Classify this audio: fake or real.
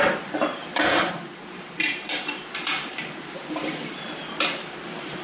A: fake